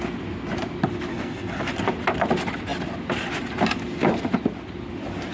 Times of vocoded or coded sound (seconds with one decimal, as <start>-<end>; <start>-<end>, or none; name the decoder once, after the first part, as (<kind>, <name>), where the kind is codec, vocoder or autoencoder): 1.1-1.6 (codec, SNAC)